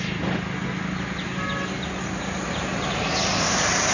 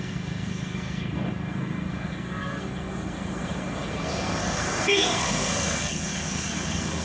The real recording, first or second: first